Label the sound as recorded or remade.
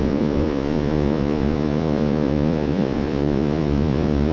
remade